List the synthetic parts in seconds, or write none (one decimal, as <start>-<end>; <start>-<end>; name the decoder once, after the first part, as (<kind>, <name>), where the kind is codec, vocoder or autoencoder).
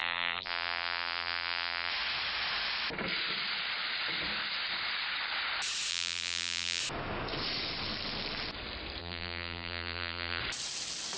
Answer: 0.0-1.9 (vocoder, BigVGAN v2); 5.9-6.8; 9.0-10.4